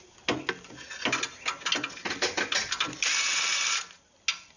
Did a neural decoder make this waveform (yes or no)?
no